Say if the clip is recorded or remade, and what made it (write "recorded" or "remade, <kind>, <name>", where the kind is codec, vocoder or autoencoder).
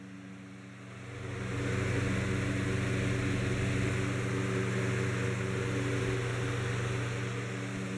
recorded